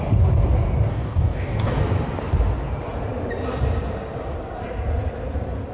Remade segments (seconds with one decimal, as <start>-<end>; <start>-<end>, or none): 0.9-1.8